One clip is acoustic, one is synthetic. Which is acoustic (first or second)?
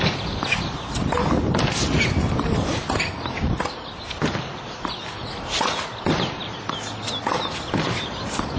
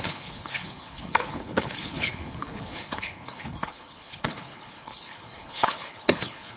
first